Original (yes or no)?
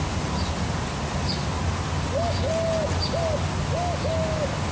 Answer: yes